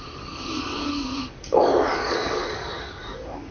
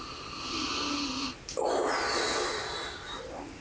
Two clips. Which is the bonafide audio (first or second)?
second